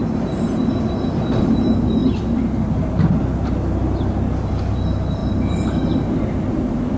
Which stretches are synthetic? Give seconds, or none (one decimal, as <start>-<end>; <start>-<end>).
0.0-0.6